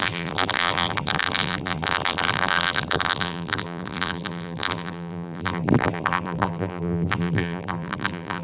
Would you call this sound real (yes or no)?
no